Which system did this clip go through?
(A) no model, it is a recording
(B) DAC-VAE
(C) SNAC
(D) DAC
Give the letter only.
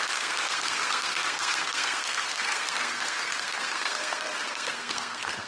C